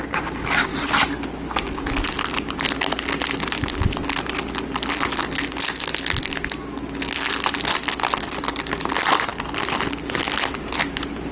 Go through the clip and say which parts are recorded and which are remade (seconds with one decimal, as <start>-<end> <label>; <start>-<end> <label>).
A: 0.0-11.3 recorded